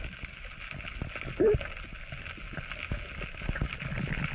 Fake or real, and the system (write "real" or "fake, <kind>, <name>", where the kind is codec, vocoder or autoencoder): real